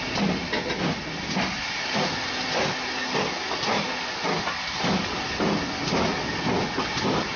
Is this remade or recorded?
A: recorded